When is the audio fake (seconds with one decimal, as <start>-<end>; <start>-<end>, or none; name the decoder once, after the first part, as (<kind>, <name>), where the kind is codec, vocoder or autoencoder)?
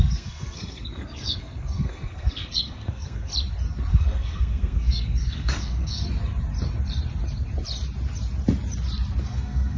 0.0-3.3 (codec, SNAC); 3.9-6.0; 9.2-9.8